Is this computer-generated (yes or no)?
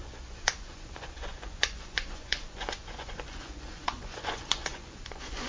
yes